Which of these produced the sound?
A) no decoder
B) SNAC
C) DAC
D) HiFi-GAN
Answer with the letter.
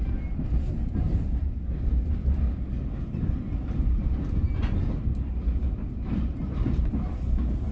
A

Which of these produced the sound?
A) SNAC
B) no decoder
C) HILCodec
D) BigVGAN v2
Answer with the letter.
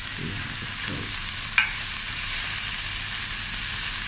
B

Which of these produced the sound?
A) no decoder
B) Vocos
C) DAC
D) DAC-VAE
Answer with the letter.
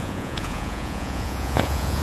B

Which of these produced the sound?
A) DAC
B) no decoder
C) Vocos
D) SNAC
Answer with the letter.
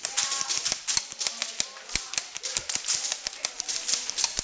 B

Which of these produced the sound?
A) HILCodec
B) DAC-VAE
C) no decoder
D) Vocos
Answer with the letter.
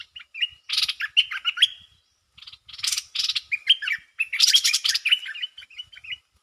C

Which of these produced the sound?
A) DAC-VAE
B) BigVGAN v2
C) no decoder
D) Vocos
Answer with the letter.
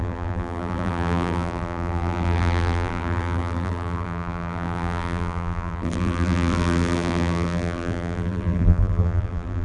B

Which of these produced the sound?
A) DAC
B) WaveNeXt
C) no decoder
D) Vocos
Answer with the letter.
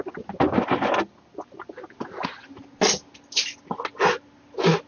C